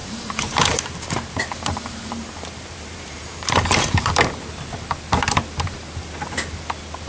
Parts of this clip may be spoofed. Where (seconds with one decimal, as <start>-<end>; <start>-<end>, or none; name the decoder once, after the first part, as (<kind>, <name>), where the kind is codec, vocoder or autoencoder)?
0.0-4.3 (vocoder, BigVGAN v2)